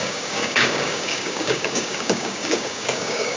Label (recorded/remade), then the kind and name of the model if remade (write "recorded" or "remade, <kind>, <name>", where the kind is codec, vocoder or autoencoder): remade, codec, DAC